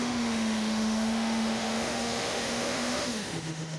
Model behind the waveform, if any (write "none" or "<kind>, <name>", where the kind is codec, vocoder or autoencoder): autoencoder, DAC-VAE